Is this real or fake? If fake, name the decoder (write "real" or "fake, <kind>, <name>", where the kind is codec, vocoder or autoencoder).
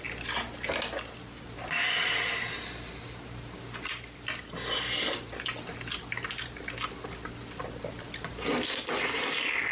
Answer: real